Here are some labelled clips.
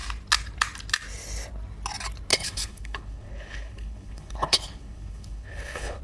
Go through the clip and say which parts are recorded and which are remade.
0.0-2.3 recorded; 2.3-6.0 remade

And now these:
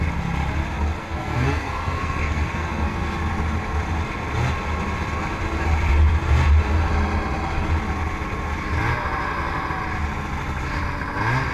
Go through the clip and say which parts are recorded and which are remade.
0.0-1.0 recorded; 1.0-3.2 remade; 3.2-11.5 recorded

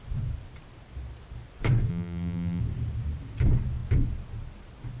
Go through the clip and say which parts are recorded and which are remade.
0.0-1.9 recorded; 1.9-2.6 remade; 2.6-5.0 recorded

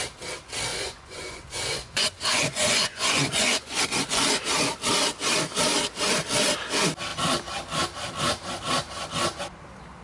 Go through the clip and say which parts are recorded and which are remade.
0.0-0.7 recorded; 0.7-4.4 remade; 4.4-10.0 recorded

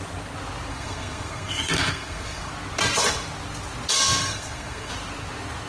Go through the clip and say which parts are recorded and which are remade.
0.0-0.7 recorded; 0.7-2.5 remade; 2.5-4.2 recorded; 4.2-4.9 remade; 4.9-5.7 recorded